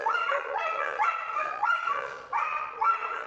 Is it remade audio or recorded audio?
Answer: remade